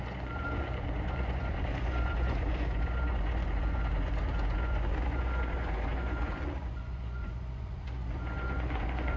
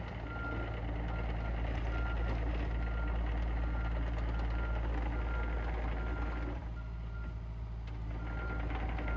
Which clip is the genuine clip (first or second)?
second